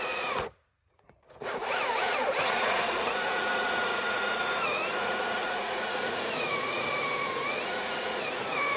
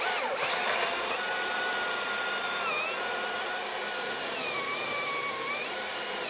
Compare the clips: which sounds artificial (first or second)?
first